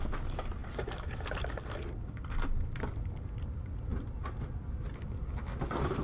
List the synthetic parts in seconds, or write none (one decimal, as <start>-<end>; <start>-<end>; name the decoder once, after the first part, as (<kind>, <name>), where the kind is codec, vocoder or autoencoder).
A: none